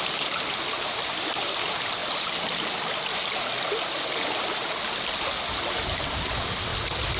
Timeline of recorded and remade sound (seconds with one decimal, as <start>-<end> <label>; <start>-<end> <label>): 0.0-7.2 recorded